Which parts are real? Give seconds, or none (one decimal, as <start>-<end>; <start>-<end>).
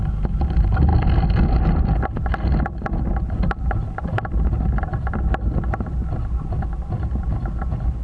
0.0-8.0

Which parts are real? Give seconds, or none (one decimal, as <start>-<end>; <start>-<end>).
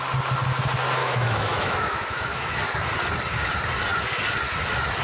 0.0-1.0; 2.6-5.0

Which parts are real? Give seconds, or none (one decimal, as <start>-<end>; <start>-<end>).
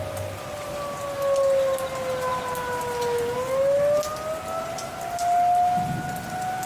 0.0-6.7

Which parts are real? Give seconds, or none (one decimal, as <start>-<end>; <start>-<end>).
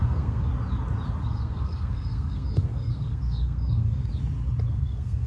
0.5-1.2; 4.1-4.7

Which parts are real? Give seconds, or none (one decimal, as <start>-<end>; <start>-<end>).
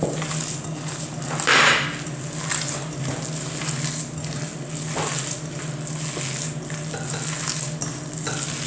0.0-8.7